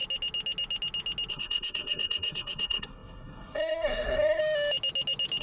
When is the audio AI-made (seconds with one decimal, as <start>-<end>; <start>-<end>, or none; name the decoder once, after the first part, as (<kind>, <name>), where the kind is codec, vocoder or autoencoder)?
1.3-4.4 (codec, SNAC)